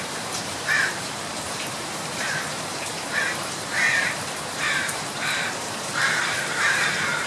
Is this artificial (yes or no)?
yes